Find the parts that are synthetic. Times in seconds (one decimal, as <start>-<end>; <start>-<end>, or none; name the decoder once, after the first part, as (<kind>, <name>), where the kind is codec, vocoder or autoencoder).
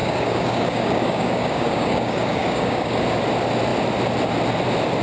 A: 0.0-3.0 (codec, DAC)